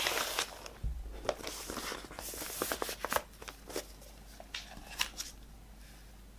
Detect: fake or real real